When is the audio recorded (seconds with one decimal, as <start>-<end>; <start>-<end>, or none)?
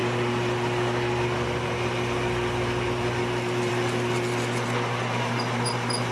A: 0.0-6.1